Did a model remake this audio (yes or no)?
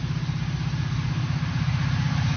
yes